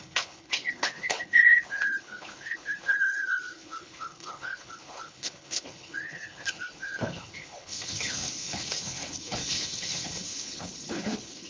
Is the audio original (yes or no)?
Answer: no